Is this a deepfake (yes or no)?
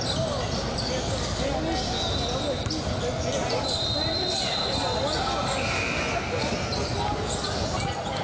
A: no